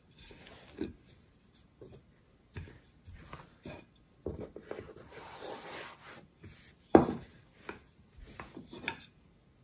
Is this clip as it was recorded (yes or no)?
yes